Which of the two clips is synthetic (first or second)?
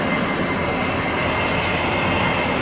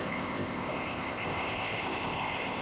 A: second